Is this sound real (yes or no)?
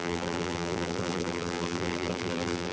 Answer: no